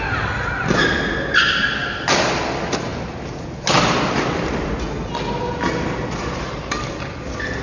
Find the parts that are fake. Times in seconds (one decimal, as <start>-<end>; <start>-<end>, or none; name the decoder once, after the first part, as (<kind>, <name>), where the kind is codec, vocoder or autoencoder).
none

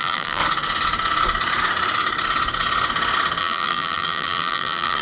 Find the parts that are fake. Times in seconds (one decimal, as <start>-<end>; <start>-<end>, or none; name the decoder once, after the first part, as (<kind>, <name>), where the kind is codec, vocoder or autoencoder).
0.0-0.4 (vocoder, BigVGAN v2); 3.4-5.0

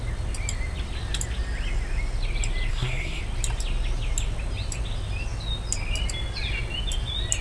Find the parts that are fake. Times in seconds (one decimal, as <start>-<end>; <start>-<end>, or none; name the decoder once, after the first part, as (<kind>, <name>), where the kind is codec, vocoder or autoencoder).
2.7-3.2 (codec, SNAC)

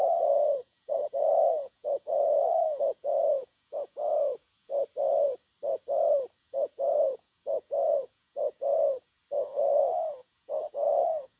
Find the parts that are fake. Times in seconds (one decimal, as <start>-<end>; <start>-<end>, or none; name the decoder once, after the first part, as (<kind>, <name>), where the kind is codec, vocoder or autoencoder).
0.0-4.7 (vocoder, Vocos); 6.4-9.2; 10.1-11.4

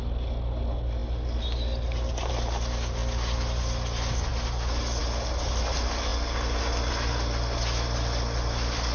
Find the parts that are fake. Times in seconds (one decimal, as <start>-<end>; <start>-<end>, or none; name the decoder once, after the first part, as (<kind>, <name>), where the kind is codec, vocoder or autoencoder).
none